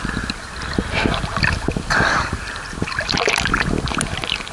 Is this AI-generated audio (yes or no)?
no